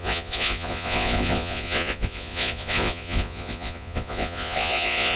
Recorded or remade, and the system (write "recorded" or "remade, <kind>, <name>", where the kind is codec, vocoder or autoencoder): remade, vocoder, Vocos